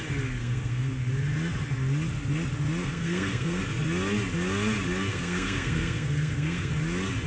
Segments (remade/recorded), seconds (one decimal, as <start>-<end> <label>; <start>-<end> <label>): 0.0-0.4 recorded; 0.4-1.0 remade; 1.0-2.8 recorded; 2.8-3.6 remade; 3.6-5.1 recorded; 5.1-6.7 remade; 6.7-7.3 recorded